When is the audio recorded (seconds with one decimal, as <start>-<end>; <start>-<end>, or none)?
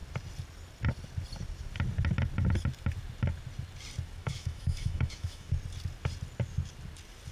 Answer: 0.0-4.2; 5.5-7.3